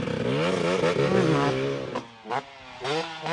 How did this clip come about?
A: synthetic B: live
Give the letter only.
B